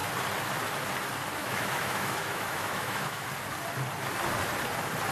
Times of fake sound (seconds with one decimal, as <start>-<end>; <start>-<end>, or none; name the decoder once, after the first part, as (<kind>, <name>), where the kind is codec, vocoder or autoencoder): 1.4-3.3 (autoencoder, DAC-VAE)